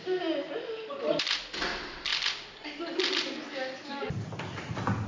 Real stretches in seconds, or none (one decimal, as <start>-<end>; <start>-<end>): 0.0-5.1